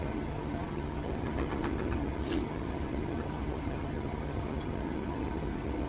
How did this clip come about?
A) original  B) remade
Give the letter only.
B